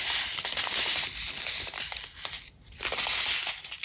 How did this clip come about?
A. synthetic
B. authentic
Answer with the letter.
B